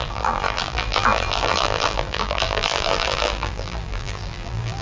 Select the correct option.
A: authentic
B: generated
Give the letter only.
B